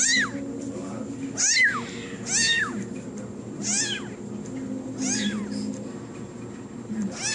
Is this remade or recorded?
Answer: recorded